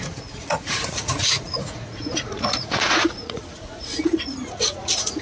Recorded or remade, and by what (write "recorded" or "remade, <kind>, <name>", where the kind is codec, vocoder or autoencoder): remade, vocoder, Vocos